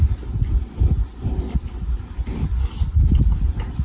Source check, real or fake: real